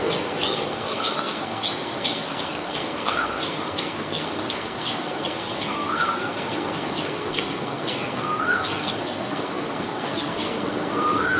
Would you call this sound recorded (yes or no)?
no